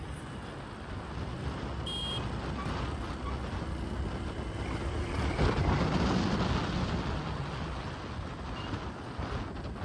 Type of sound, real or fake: real